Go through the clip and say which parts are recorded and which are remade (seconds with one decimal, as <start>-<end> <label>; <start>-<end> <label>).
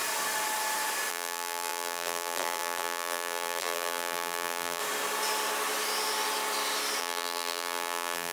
0.0-1.1 recorded; 1.1-4.8 remade; 4.8-7.0 recorded; 7.0-8.3 remade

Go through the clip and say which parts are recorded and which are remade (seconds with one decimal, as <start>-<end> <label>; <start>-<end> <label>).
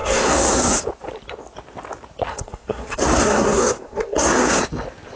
0.0-0.8 remade; 0.8-2.3 recorded; 2.3-4.6 remade; 4.6-5.2 recorded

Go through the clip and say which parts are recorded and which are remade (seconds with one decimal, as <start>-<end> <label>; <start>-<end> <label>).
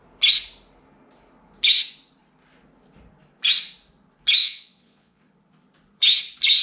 0.0-4.4 recorded; 4.4-5.2 remade; 5.2-6.6 recorded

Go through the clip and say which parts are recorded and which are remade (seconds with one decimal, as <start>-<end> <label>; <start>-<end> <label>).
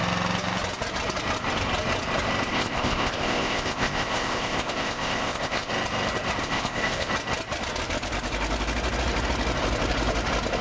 0.0-2.5 recorded; 2.5-5.7 remade; 5.7-6.4 recorded; 6.4-7.1 remade; 7.1-10.6 recorded